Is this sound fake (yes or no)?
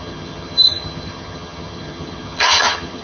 yes